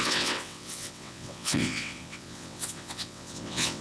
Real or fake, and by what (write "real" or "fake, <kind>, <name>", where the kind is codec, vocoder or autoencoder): fake, vocoder, WaveNeXt